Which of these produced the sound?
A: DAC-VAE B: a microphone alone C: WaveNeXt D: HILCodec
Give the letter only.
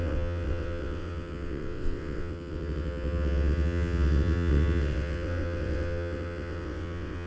C